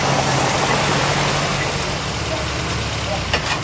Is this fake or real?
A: real